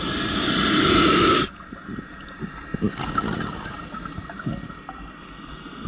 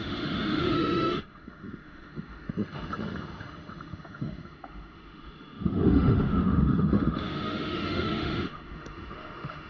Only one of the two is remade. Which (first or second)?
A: second